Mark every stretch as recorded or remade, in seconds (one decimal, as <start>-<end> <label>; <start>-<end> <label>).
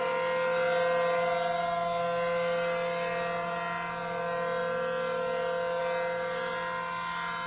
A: 0.0-7.5 recorded